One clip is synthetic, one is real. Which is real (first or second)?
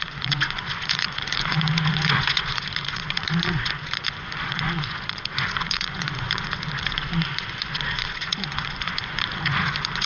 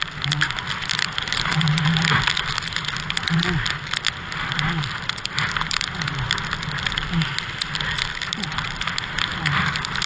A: second